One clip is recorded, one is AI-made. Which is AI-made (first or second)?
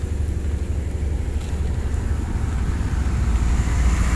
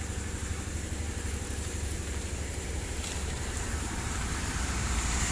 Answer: second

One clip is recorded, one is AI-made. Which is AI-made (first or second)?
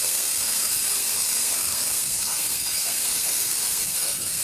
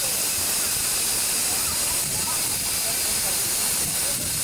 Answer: first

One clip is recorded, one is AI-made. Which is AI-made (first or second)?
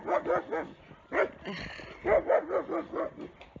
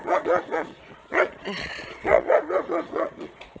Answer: second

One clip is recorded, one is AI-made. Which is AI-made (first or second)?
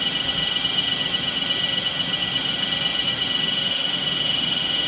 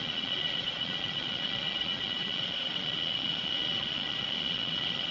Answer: second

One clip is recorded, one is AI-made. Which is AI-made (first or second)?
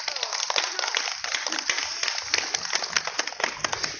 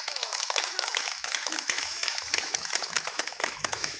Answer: second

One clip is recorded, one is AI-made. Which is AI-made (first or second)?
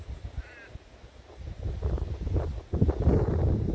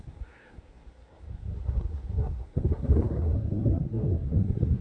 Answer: second